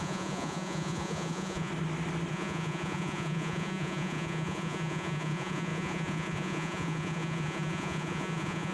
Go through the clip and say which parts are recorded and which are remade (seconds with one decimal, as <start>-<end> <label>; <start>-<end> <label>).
0.0-1.7 remade; 1.7-2.3 recorded; 2.3-8.7 remade